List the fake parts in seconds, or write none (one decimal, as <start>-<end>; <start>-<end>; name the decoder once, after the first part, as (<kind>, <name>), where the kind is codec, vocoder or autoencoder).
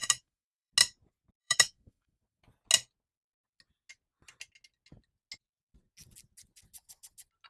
0.0-0.7 (autoencoder, DAC-VAE); 1.4-2.4